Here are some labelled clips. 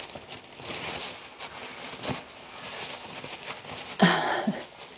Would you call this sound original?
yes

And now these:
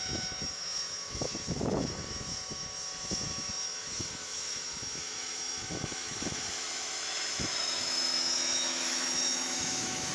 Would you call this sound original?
no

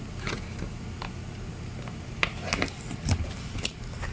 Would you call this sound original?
yes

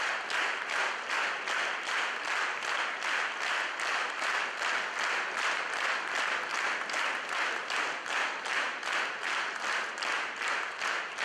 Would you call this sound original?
yes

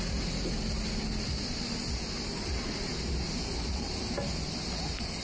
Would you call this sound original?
yes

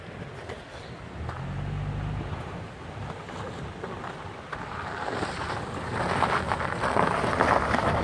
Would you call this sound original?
yes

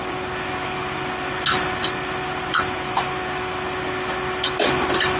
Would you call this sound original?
yes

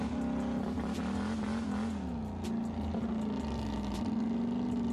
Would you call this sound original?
yes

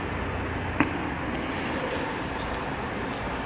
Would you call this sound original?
yes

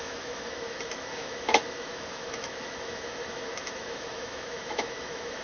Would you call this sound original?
no